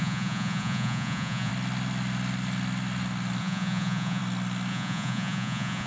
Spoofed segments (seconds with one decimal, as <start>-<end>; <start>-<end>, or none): 0.0-1.5; 3.4-4.2; 4.7-5.9